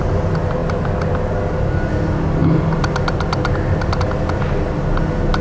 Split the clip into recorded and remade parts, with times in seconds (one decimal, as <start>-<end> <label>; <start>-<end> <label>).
0.0-5.4 recorded